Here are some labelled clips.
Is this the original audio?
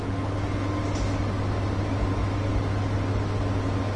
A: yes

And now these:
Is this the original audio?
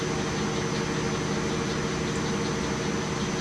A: yes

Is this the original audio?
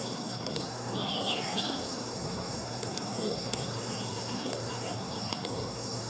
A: no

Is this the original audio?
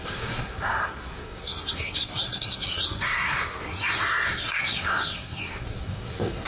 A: no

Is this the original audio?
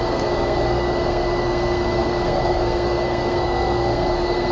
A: no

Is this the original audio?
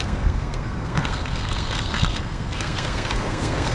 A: no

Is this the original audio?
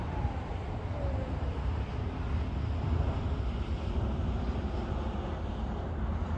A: yes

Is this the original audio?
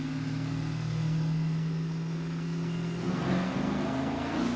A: no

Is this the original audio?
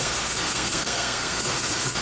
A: no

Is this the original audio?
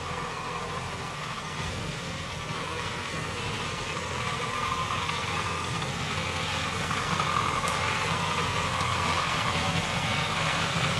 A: no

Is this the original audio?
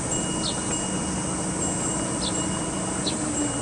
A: yes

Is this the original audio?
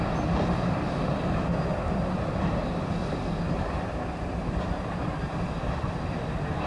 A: yes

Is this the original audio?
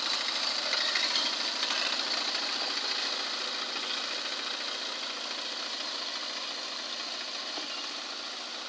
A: yes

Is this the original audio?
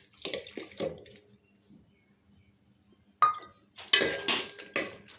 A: yes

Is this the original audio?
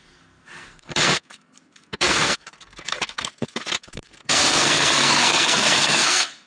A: no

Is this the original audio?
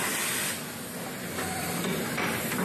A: yes